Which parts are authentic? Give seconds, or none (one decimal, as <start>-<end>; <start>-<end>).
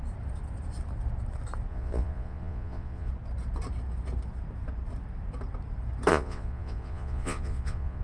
0.0-1.7; 3.1-6.1